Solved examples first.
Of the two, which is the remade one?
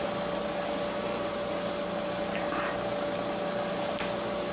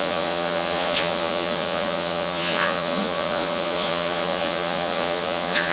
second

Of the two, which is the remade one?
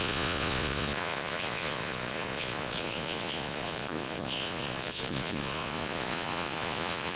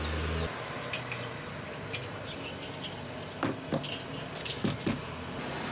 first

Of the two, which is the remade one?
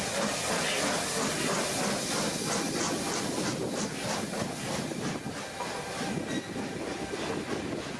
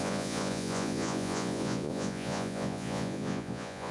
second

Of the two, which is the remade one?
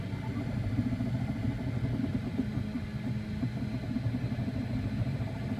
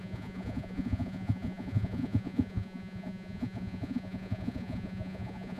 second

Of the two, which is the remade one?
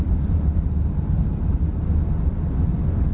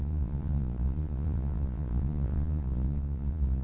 second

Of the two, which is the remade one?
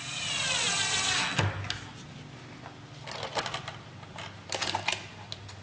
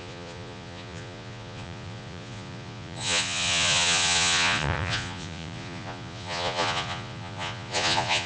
second